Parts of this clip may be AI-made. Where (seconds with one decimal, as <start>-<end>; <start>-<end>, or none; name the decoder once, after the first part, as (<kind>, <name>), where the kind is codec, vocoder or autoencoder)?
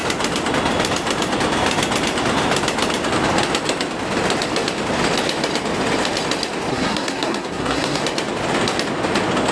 6.7-8.0 (codec, SNAC)